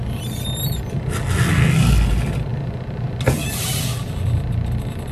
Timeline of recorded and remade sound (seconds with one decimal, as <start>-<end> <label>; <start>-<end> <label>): 0.0-5.1 recorded